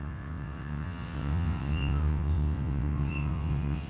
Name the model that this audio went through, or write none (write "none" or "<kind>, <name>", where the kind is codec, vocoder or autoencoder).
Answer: vocoder, WaveNeXt